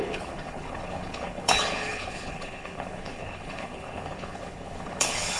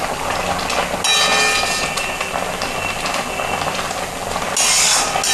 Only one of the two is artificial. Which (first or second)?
first